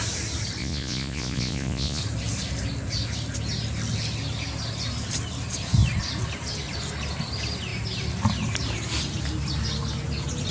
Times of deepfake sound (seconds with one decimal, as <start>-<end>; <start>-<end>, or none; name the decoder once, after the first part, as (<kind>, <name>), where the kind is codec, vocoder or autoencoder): 0.6-2.0 (vocoder, Vocos)